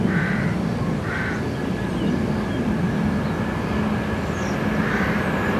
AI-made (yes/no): no